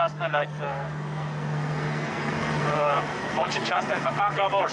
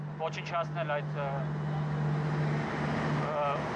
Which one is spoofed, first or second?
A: first